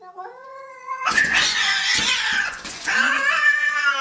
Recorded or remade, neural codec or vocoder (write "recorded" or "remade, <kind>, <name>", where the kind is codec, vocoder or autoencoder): remade, vocoder, Vocos